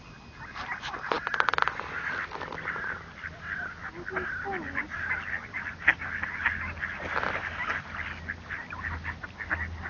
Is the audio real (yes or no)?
yes